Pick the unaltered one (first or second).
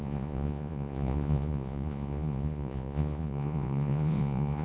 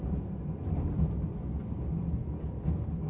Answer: second